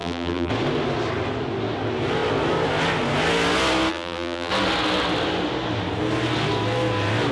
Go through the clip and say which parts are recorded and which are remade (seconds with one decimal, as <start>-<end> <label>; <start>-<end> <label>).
0.0-0.5 remade; 0.5-3.9 recorded; 3.9-4.5 remade; 4.5-7.3 recorded